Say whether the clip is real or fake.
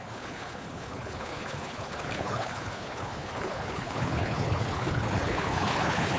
fake